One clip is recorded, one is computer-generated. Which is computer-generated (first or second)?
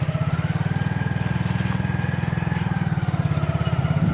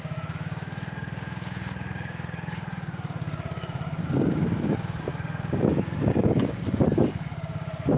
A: second